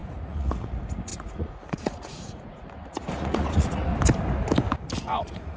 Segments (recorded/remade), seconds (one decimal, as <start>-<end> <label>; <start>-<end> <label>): 0.0-3.9 remade; 3.9-5.0 recorded; 5.0-5.6 remade